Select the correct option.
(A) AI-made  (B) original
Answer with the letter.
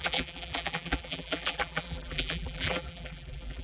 A